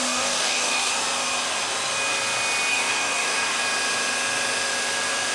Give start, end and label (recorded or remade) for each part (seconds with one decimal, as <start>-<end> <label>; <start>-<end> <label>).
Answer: 0.0-0.9 remade; 0.9-2.7 recorded; 2.7-3.6 remade; 3.6-5.3 recorded